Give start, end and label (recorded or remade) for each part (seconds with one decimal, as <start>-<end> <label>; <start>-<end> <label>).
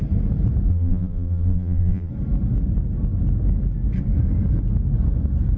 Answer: 0.0-0.7 recorded; 0.7-2.1 remade; 2.1-5.6 recorded